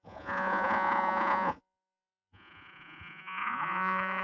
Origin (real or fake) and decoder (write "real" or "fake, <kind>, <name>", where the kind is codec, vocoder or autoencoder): fake, vocoder, Vocos